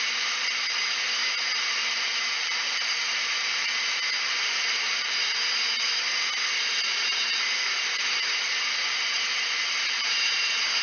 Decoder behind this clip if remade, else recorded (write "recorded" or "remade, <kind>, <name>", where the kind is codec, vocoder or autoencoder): remade, vocoder, BigVGAN v2